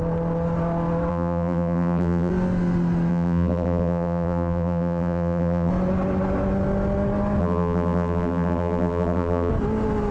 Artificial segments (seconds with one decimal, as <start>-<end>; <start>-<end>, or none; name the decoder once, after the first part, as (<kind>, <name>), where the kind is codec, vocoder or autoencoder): 1.1-2.3 (vocoder, BigVGAN v2); 3.1-5.7; 7.4-9.5